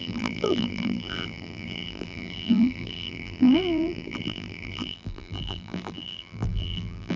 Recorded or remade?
remade